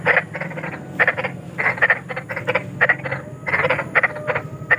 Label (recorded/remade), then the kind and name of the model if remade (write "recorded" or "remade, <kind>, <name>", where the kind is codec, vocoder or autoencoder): recorded